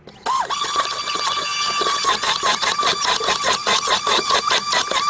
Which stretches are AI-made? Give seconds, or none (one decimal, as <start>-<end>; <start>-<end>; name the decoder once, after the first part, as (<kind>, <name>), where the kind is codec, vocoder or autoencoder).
3.6-4.4 (vocoder, Vocos)